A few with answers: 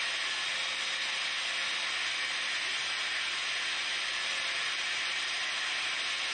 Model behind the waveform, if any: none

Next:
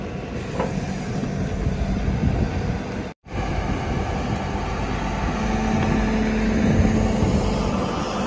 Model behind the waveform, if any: none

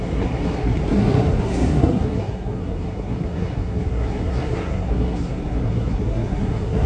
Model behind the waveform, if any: codec, SNAC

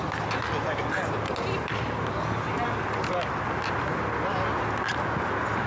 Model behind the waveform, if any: none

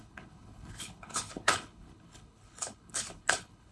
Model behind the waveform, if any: codec, HILCodec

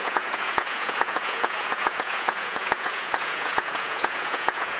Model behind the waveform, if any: vocoder, Vocos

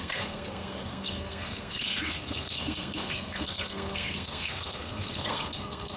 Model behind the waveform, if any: codec, SNAC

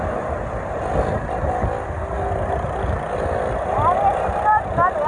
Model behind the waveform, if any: none